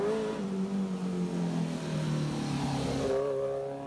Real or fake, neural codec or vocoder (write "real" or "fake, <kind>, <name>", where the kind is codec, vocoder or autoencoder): real